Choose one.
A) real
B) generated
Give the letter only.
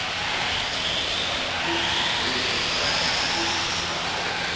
A